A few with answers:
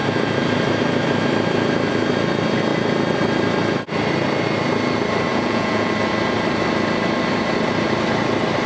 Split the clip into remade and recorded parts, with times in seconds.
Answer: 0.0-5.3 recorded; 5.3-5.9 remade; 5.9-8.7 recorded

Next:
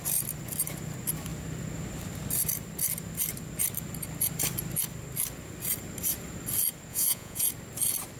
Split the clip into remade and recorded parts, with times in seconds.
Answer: 0.0-6.9 recorded; 6.9-7.5 remade; 7.5-8.2 recorded